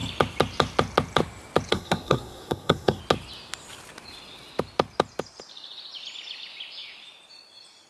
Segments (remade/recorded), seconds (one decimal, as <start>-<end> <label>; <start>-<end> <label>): 0.0-1.7 recorded; 1.7-3.0 remade; 3.0-7.9 recorded